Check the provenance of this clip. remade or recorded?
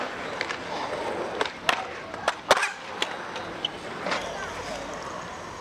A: recorded